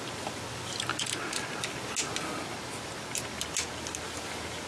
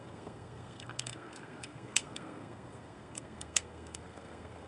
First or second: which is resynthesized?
second